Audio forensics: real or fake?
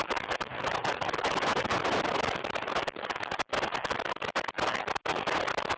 fake